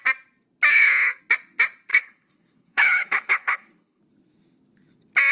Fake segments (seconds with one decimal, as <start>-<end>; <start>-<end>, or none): 0.7-1.2; 1.9-4.0